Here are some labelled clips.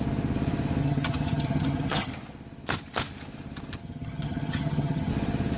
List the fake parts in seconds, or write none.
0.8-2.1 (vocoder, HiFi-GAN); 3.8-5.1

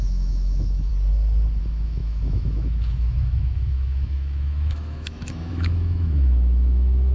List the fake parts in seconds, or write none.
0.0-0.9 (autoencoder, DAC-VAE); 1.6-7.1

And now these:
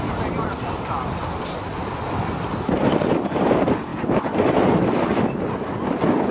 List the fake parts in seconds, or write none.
3.9-5.2 (vocoder, BigVGAN v2)

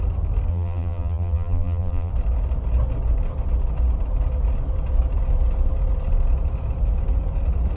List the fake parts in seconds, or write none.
0.5-2.1 (vocoder, BigVGAN v2)

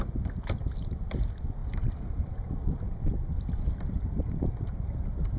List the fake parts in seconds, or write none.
none